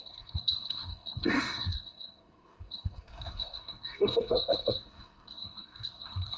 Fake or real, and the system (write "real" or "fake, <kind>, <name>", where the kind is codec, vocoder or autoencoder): fake, codec, SNAC